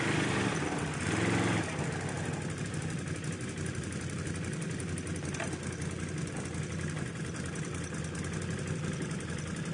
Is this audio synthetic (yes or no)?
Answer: no